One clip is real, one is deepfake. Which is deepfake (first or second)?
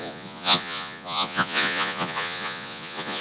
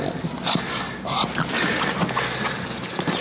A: first